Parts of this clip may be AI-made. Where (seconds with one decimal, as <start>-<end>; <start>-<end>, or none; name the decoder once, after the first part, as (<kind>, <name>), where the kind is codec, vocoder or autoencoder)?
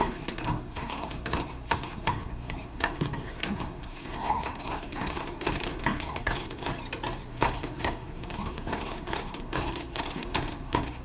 0.0-6.7 (codec, SNAC); 7.3-11.0